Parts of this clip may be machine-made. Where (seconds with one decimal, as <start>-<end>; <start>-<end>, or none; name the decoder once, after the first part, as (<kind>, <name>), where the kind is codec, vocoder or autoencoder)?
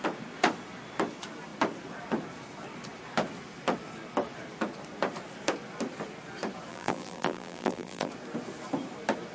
6.7-8.1 (vocoder, BigVGAN v2)